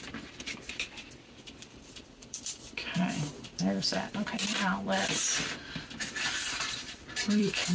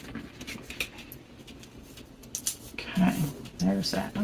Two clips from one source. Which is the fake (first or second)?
first